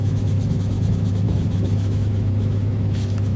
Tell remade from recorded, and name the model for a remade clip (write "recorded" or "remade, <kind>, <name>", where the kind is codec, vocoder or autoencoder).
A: remade, autoencoder, DAC-VAE